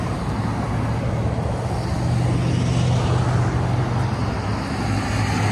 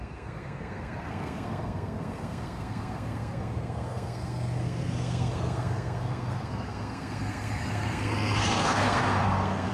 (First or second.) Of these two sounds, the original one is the first